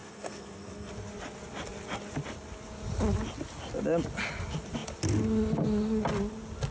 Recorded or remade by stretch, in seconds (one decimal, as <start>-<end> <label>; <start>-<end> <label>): 0.0-0.9 remade; 0.9-6.7 recorded